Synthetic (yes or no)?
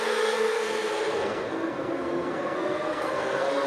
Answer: yes